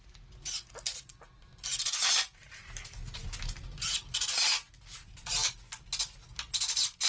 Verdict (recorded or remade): recorded